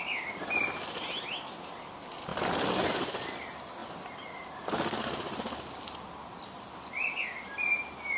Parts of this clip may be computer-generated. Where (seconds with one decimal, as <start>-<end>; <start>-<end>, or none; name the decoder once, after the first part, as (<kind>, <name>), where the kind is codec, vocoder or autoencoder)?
none